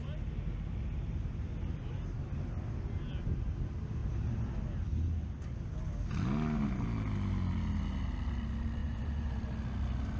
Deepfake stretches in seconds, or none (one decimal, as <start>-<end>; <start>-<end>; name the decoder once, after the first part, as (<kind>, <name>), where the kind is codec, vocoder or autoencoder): 8.8-9.3 (vocoder, Vocos)